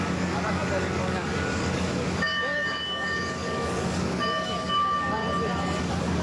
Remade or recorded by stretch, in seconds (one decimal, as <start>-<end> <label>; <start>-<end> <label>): 0.0-5.2 remade; 5.2-5.8 recorded; 5.8-6.2 remade